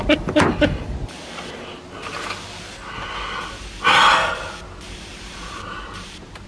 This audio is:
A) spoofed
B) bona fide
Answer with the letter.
B